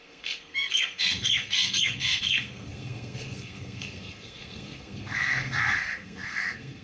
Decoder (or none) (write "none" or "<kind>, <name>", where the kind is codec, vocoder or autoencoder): codec, SNAC